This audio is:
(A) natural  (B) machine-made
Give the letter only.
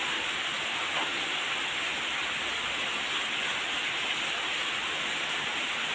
A